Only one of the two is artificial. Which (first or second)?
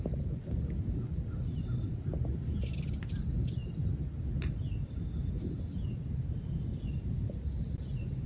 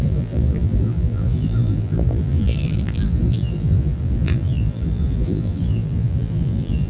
second